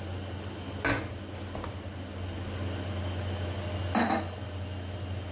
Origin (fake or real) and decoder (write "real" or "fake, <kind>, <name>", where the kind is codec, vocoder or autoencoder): real